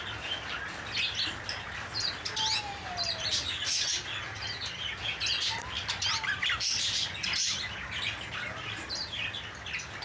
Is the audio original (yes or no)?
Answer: yes